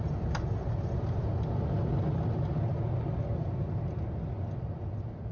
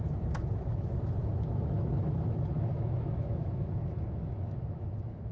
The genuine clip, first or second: first